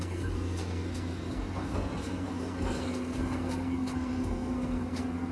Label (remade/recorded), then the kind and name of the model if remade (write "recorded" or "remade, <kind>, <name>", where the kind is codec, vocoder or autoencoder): remade, codec, SNAC